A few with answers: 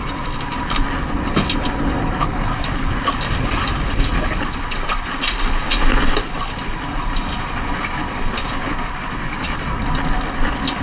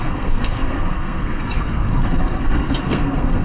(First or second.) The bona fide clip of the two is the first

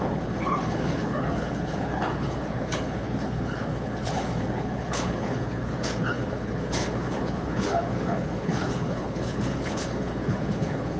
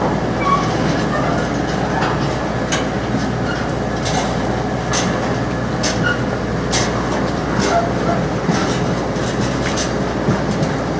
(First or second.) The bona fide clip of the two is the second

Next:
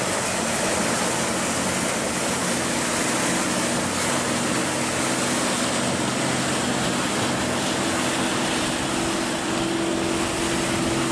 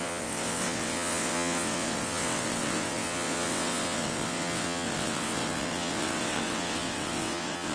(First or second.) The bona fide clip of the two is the first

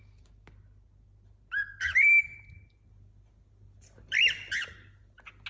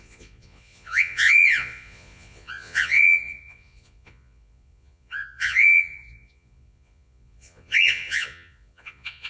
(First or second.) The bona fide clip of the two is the first